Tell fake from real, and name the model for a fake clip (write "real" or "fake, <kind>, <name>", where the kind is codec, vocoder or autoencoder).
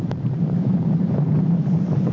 fake, vocoder, BigVGAN v2